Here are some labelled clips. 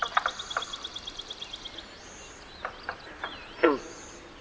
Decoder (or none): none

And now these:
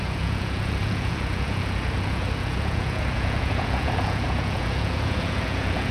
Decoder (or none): vocoder, Vocos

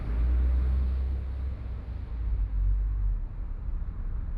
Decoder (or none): none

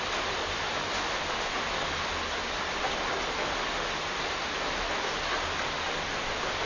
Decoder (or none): none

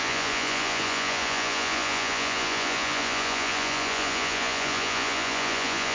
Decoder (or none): vocoder, Vocos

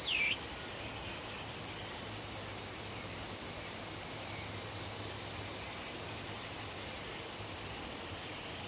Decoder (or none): none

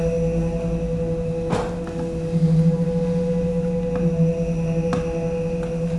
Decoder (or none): none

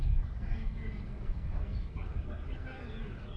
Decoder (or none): codec, SNAC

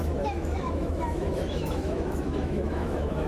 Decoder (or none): autoencoder, DAC-VAE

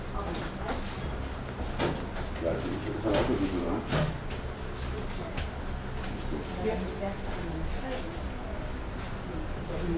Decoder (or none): none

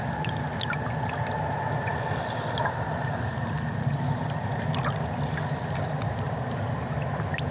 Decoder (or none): none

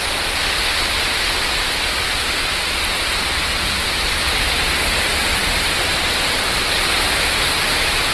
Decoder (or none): vocoder, BigVGAN v2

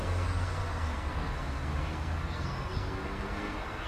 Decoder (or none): codec, SNAC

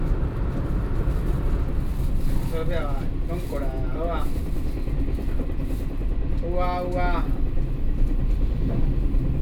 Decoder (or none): none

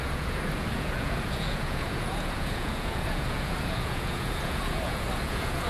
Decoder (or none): vocoder, Vocos